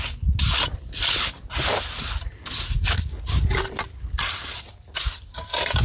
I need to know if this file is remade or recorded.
recorded